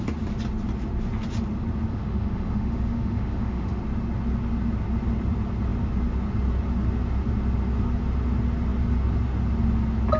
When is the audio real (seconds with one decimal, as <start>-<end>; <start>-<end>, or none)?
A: 0.0-1.9; 3.8-10.2

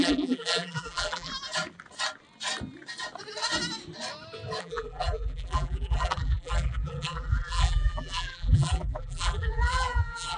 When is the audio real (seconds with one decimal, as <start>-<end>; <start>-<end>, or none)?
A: 1.3-4.6